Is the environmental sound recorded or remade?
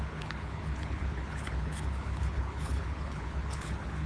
remade